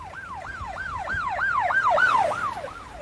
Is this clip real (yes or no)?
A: no